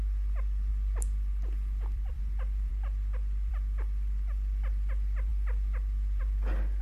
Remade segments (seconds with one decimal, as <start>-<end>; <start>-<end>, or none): 0.0-2.7; 3.5-6.8